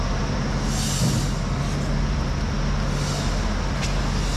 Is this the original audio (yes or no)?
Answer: yes